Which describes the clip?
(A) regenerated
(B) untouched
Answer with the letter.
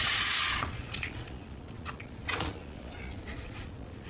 A